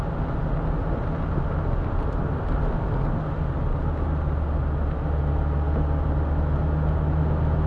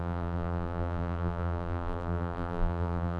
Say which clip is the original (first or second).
first